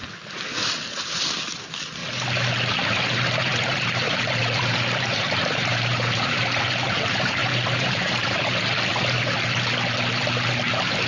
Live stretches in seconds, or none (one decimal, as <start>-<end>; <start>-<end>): 0.0-3.4; 6.4-7.4; 8.5-11.1